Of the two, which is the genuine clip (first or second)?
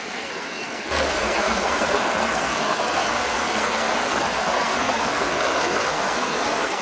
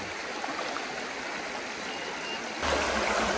second